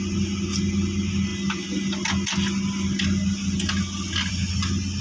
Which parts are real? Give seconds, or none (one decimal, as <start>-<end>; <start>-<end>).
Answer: 0.0-5.0